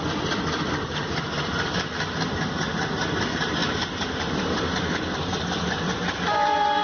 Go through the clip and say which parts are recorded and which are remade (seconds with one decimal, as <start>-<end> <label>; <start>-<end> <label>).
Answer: 0.0-3.6 remade; 3.6-4.4 recorded; 4.4-6.8 remade